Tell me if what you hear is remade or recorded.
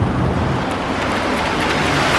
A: recorded